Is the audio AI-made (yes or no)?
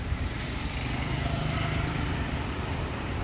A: no